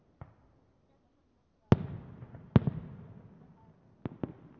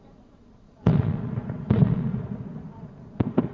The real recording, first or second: first